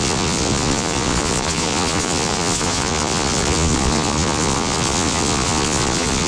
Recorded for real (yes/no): no